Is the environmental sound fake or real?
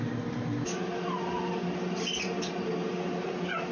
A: real